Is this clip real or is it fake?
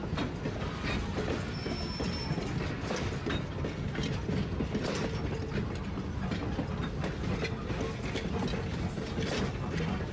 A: real